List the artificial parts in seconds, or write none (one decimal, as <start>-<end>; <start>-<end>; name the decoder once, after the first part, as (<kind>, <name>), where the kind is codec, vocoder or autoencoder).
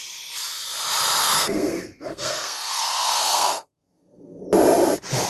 1.2-4.4 (codec, SNAC)